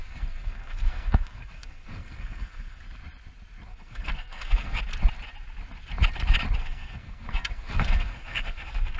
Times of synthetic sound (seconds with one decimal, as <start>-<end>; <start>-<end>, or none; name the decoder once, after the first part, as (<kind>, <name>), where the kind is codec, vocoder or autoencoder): 0.0-2.8 (codec, SNAC); 3.7-4.8; 6.6-9.0